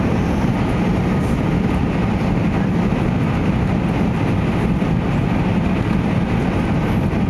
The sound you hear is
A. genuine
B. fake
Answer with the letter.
A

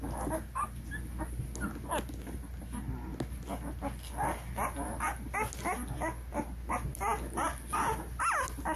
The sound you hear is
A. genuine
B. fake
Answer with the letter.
A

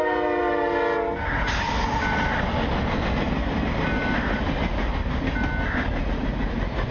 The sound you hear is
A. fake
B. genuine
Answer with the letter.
B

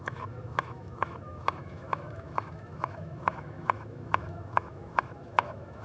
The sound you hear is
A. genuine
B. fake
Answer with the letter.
B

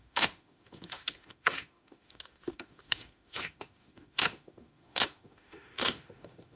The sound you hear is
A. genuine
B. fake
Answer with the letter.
B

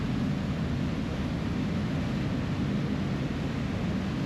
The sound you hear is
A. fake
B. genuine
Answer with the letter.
B